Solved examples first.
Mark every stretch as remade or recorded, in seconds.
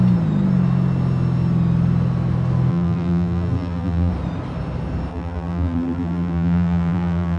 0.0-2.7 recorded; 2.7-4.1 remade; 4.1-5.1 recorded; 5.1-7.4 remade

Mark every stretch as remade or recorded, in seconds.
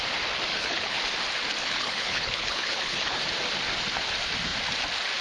0.0-0.5 recorded; 0.5-1.0 remade; 1.0-1.6 recorded; 1.6-3.2 remade; 3.2-5.2 recorded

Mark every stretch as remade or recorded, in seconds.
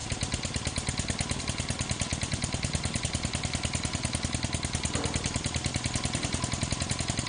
0.0-7.3 recorded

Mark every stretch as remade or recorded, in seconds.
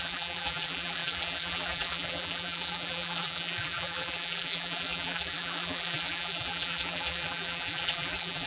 0.0-8.5 remade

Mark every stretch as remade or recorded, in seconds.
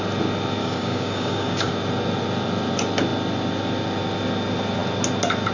0.0-0.6 recorded; 0.6-1.7 remade; 1.7-5.5 recorded